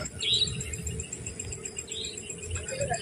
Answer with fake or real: real